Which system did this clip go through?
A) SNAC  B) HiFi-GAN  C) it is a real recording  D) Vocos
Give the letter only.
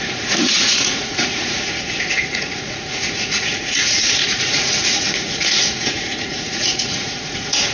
D